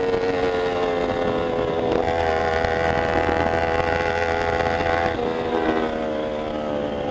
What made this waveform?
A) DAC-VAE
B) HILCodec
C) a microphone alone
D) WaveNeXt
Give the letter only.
C